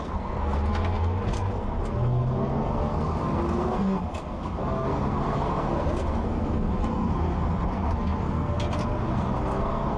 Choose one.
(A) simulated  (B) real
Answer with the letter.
A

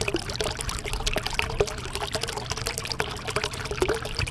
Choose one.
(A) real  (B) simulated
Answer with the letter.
A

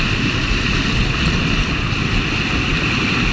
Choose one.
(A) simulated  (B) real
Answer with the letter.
B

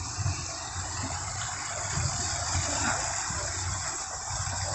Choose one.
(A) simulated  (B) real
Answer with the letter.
B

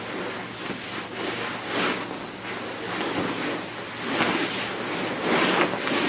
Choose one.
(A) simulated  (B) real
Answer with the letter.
B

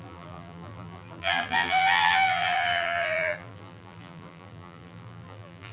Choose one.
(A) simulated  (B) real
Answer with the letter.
A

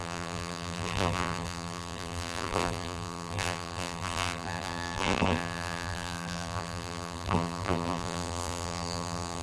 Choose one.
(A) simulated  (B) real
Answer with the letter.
A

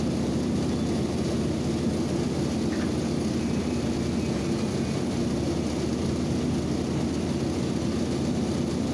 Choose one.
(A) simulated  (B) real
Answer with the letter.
B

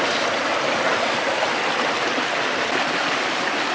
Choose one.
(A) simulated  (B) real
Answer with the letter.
B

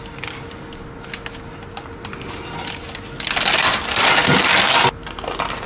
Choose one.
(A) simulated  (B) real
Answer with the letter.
B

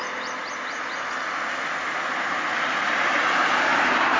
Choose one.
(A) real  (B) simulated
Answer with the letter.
A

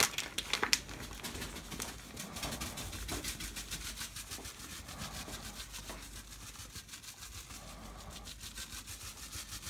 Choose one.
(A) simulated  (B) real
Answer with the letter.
B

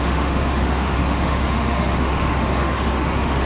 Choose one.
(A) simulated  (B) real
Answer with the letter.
A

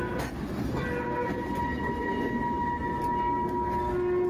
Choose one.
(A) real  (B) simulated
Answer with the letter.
A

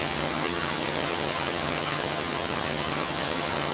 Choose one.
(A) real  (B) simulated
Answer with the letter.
B